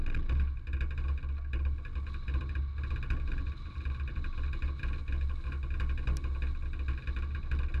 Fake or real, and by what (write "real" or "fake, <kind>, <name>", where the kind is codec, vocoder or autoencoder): real